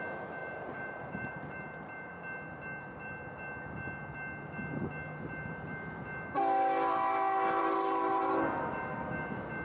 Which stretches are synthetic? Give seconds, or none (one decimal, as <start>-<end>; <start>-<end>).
0.4-2.1; 7.6-8.2